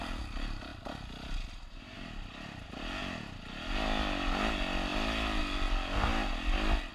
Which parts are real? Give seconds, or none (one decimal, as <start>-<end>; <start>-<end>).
0.0-6.9

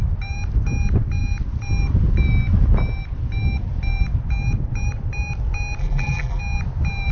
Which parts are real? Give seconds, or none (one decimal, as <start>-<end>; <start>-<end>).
0.0-5.8; 6.4-7.1

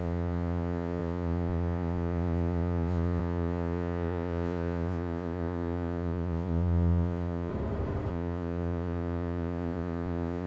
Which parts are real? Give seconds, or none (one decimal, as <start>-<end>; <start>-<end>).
7.5-8.1

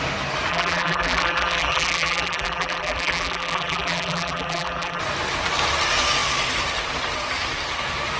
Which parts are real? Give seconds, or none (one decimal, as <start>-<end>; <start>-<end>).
0.0-0.5; 5.0-8.2

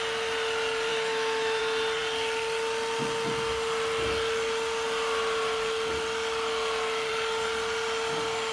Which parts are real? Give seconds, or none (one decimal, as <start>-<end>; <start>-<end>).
0.0-0.9; 1.6-8.5